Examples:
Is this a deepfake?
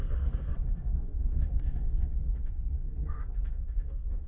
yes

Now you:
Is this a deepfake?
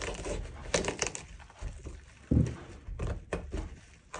no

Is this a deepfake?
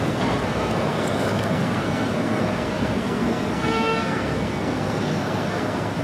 yes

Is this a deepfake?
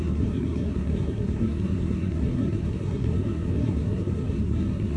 yes